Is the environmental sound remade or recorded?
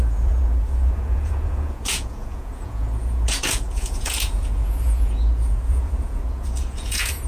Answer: remade